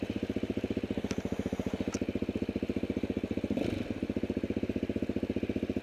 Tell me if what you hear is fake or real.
real